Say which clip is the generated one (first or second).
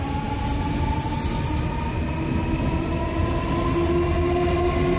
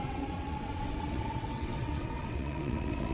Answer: second